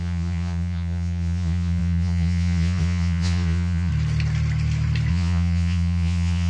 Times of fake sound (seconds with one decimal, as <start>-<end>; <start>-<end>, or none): 0.0-3.9; 5.1-6.5